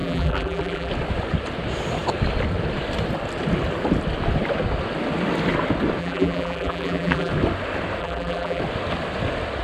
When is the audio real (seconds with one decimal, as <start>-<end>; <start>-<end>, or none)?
0.9-6.0; 7.3-8.0; 8.6-9.6